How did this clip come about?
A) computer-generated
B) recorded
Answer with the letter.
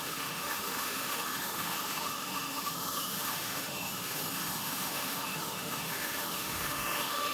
A